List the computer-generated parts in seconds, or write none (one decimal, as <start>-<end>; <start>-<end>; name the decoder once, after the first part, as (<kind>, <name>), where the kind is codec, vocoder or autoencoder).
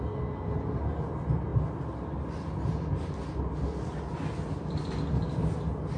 none